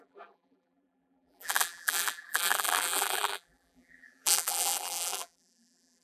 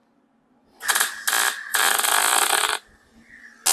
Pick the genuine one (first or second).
second